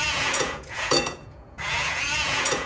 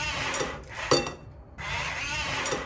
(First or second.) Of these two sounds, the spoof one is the first